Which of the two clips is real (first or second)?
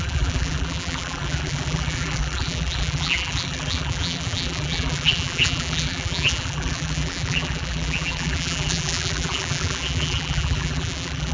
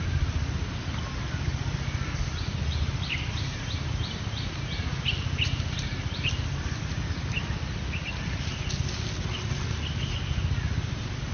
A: second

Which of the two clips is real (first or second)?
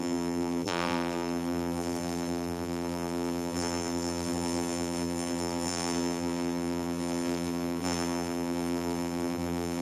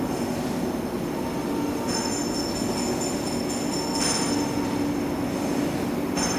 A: second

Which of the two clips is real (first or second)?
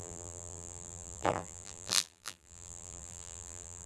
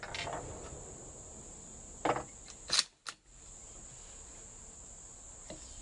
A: second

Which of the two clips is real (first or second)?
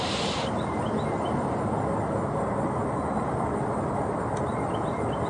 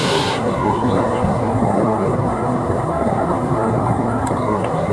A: first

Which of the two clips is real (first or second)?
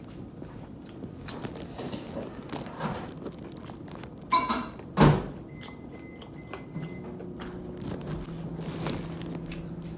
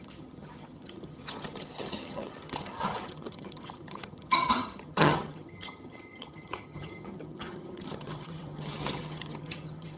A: first